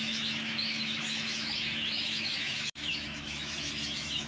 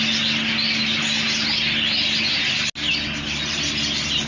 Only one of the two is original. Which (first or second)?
second